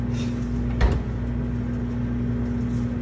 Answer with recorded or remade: recorded